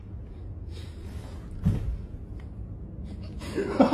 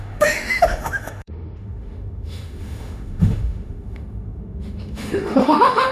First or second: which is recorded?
first